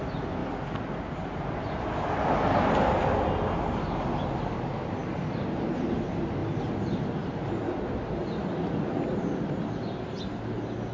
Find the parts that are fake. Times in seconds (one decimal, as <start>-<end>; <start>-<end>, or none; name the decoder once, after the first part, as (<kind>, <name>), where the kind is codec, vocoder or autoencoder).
none